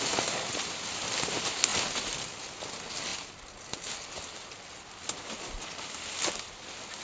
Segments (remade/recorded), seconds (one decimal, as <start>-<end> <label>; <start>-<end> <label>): 0.0-7.0 recorded